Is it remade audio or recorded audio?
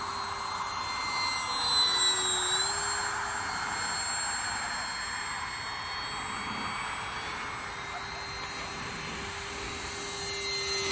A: recorded